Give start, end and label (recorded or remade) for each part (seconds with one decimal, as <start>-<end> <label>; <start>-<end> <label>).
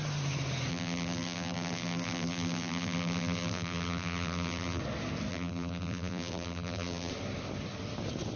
0.0-0.7 recorded; 0.7-4.8 remade; 4.8-5.3 recorded; 5.3-7.1 remade; 7.1-8.4 recorded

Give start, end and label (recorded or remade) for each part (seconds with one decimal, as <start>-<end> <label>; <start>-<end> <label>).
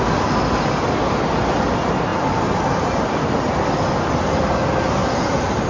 0.0-2.1 recorded; 2.1-4.1 remade; 4.1-5.0 recorded; 5.0-5.7 remade